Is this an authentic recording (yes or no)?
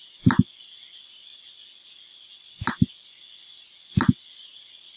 yes